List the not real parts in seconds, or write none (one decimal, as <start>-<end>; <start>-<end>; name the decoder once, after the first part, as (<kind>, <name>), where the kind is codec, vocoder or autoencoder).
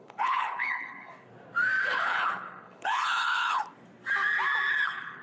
0.0-1.1 (codec, HILCodec); 1.8-3.6; 4.7-5.2